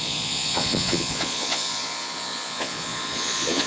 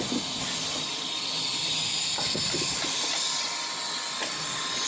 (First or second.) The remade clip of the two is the first